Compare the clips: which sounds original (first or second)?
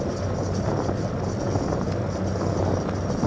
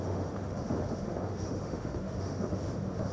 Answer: first